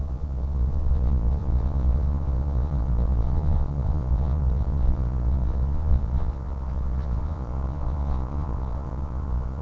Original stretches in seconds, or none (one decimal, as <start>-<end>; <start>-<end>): none